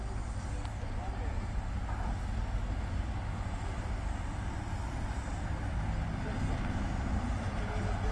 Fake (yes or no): no